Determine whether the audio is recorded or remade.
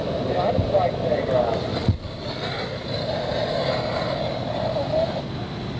recorded